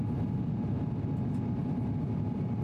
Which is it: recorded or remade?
recorded